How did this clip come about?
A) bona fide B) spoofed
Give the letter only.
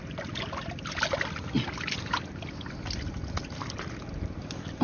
A